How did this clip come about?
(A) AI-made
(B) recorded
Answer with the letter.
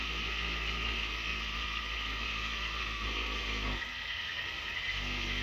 A